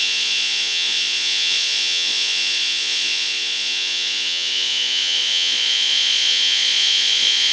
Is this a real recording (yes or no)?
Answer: no